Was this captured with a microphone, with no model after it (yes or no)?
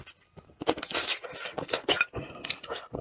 yes